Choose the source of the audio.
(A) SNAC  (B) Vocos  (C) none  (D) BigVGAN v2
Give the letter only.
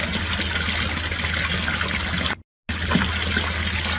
C